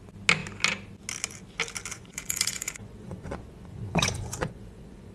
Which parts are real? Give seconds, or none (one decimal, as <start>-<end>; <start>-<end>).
0.0-1.9